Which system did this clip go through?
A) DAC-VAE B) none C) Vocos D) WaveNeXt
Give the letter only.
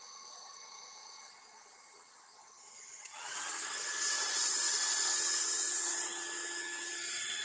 D